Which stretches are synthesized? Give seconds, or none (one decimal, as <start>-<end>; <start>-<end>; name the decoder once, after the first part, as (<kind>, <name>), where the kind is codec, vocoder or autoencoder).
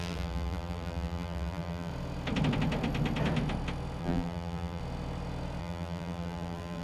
0.0-1.9 (vocoder, BigVGAN v2); 4.0-4.8; 5.6-6.8